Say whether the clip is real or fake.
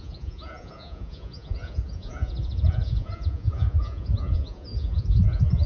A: fake